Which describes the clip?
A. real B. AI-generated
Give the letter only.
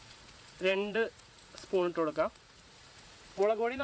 B